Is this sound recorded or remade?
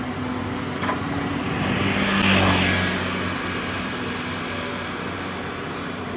recorded